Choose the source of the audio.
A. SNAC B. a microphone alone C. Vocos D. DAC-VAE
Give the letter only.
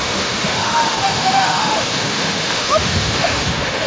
D